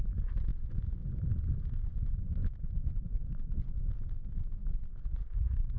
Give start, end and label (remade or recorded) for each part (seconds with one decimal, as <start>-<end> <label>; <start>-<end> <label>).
0.0-0.5 recorded; 0.5-3.8 remade; 3.8-4.6 recorded; 4.6-5.8 remade